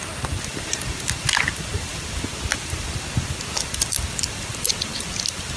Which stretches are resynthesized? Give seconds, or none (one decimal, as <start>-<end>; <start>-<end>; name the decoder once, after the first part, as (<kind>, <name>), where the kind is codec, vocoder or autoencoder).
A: none